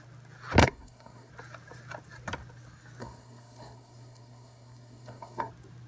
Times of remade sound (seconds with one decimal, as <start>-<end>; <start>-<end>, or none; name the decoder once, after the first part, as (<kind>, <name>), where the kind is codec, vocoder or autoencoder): 0.6-1.3 (codec, SNAC); 3.0-5.5